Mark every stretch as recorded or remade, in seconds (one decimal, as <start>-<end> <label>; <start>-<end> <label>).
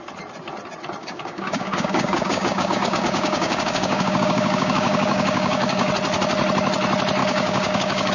0.0-1.0 recorded; 1.0-5.9 remade; 5.9-7.2 recorded; 7.2-8.1 remade